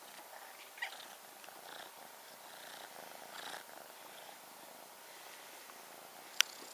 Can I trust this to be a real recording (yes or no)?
yes